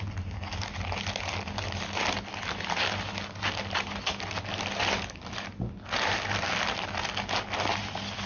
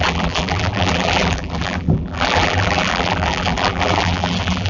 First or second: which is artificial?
second